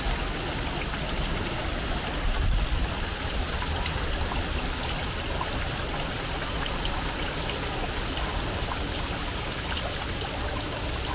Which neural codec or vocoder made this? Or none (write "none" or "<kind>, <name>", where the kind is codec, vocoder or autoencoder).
none